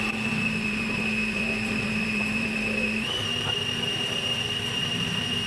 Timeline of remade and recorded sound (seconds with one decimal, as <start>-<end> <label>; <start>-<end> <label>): 0.0-5.5 remade